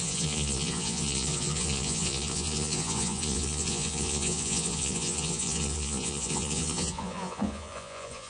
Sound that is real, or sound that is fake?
fake